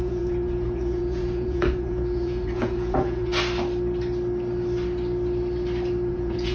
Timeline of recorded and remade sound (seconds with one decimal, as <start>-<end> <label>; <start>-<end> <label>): 0.0-3.3 remade; 3.3-6.1 recorded; 6.1-6.5 remade